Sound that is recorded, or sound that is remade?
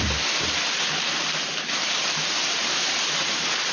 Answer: remade